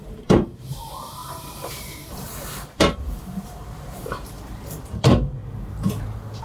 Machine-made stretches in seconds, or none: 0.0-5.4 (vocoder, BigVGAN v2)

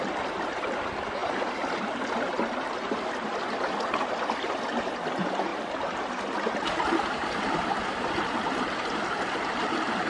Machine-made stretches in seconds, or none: 0.0-1.2 (vocoder, BigVGAN v2); 5.1-5.5; 7.4-10.1

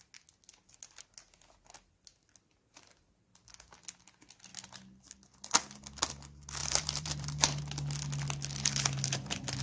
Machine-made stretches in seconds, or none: 6.6-7.6 (vocoder, BigVGAN v2)

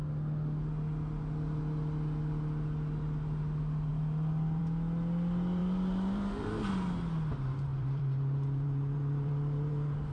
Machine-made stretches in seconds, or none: 5.6-6.7 (vocoder, BigVGAN v2); 7.7-10.1

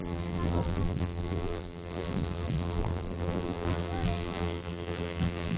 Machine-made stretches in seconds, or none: 0.0-5.6 (vocoder, BigVGAN v2)

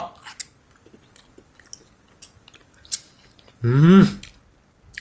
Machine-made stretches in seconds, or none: 2.6-3.1 (vocoder, BigVGAN v2)

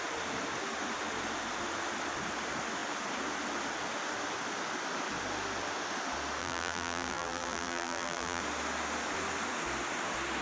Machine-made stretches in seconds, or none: 6.4-8.4 (vocoder, BigVGAN v2)

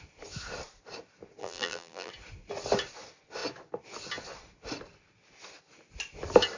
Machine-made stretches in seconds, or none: 1.4-2.1 (vocoder, BigVGAN v2)